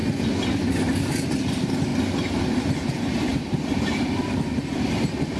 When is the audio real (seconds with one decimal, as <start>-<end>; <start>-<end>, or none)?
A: 0.0-1.4; 1.9-2.5